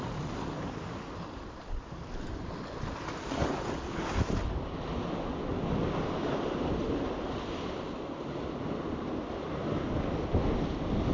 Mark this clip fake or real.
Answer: real